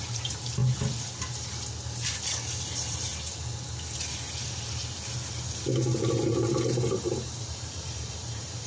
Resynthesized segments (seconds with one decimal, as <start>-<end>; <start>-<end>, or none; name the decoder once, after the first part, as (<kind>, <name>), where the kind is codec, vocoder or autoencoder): 0.0-0.6 (vocoder, BigVGAN v2); 2.5-3.1; 6.3-8.7